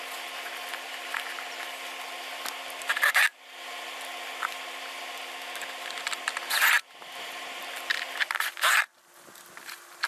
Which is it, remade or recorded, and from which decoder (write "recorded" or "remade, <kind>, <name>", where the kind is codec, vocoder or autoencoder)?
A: recorded